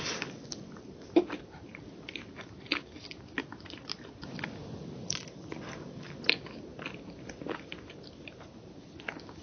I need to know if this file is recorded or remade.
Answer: recorded